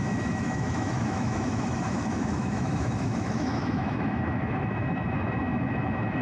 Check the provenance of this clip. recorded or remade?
remade